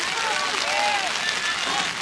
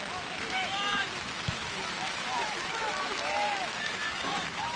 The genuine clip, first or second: first